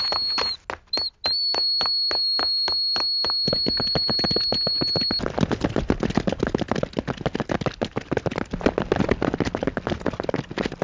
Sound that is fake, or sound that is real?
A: real